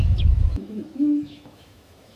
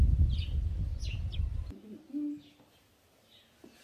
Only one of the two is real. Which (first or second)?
second